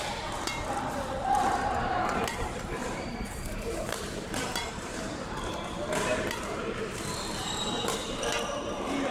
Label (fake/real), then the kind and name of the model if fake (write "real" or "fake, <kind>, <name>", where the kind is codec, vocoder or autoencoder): fake, vocoder, BigVGAN v2